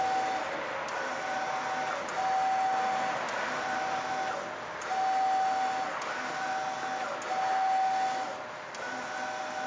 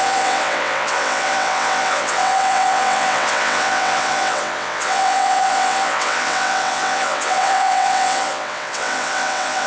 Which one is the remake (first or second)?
second